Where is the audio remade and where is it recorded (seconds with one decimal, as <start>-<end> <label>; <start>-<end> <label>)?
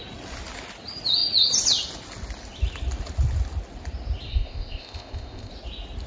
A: 0.0-4.3 recorded; 4.3-5.5 remade; 5.5-6.1 recorded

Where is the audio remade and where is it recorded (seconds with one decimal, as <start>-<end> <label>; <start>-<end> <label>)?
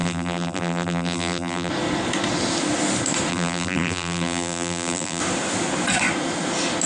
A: 0.0-1.7 remade; 1.7-3.3 recorded; 3.3-5.2 remade; 5.2-6.9 recorded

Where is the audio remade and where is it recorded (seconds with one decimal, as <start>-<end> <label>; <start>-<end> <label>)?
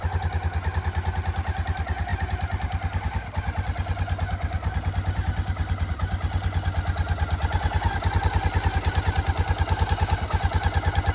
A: 0.0-11.1 recorded